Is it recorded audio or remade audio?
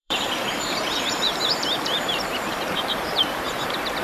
remade